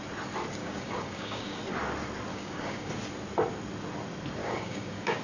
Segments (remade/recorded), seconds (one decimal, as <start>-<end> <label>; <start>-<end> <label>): 0.0-0.6 recorded; 0.6-1.6 remade; 1.6-2.3 recorded; 2.3-2.9 remade; 2.9-4.4 recorded; 4.4-5.2 remade